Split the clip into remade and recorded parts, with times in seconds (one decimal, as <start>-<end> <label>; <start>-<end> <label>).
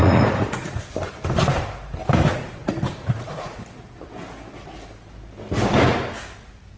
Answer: 0.0-0.9 remade; 0.9-2.3 recorded; 2.3-3.7 remade; 3.7-6.8 recorded